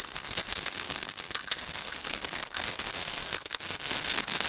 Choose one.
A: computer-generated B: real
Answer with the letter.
A